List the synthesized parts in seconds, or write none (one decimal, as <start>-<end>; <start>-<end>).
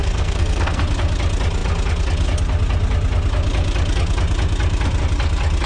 0.0-0.8